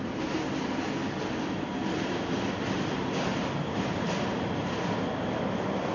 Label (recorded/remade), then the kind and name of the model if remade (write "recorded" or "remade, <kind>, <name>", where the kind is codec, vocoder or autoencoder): recorded